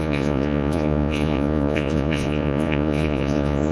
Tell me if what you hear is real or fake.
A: fake